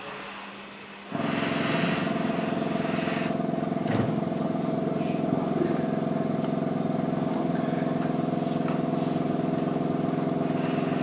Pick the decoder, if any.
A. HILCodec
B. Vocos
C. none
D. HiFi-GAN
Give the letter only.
C